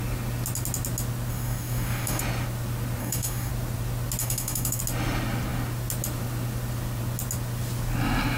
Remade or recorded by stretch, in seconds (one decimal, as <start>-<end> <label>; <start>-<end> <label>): 0.0-1.3 recorded; 1.3-2.2 remade; 2.2-3.0 recorded; 3.0-3.5 remade; 3.5-4.2 recorded; 4.2-4.8 remade; 4.8-8.4 recorded